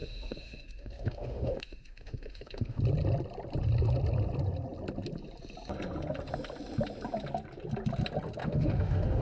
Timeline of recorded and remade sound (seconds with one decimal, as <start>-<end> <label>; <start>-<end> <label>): 0.0-2.8 remade; 2.8-8.4 recorded; 8.4-9.2 remade

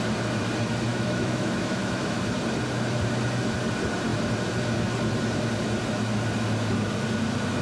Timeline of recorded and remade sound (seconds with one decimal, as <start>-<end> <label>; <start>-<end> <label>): 0.0-0.9 recorded; 0.9-2.2 remade; 2.2-7.6 recorded

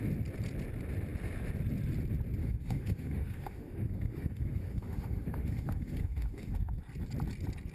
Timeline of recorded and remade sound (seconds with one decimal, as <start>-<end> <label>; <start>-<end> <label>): 0.0-2.4 recorded; 2.4-6.8 remade; 6.8-7.7 recorded

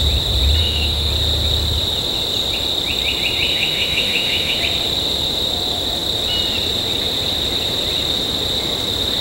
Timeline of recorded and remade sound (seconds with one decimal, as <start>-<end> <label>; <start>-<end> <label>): 0.0-0.6 recorded; 0.6-1.1 remade; 1.1-3.5 recorded; 3.5-4.6 remade; 4.6-9.2 recorded